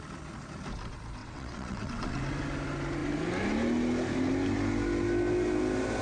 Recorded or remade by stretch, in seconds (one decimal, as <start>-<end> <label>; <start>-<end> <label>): 0.0-1.2 recorded; 1.2-2.2 remade; 2.2-6.0 recorded